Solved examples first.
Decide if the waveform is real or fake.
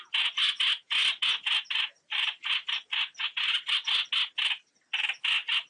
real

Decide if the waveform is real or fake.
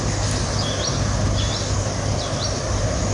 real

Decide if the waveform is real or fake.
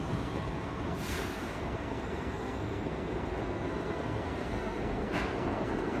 fake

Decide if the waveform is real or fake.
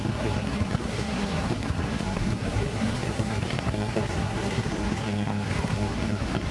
fake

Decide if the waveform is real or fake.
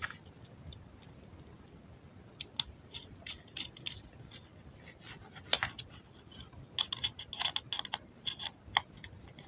real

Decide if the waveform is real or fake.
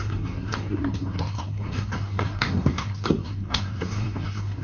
fake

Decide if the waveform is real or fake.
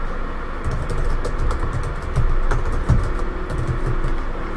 real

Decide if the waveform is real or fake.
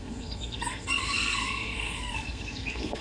fake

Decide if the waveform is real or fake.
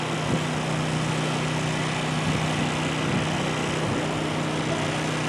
real